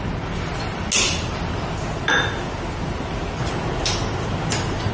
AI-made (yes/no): no